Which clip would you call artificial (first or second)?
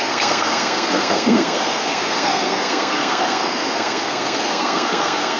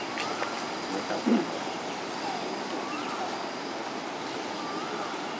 first